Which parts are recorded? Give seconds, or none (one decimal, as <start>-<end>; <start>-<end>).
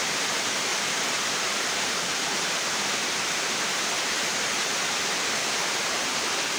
0.0-0.7; 4.7-5.4